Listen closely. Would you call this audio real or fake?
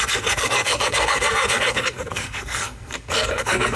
fake